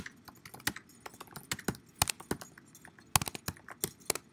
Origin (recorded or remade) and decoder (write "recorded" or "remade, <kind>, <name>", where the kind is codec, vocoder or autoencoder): recorded